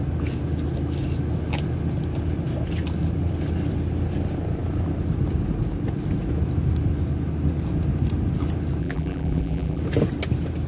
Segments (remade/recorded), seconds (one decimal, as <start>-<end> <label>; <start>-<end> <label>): 0.0-8.8 recorded; 8.8-9.8 remade; 9.8-10.7 recorded